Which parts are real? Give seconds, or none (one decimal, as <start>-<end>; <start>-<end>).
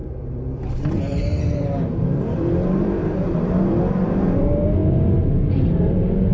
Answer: 4.8-5.5